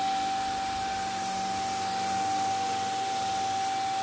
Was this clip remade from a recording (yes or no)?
no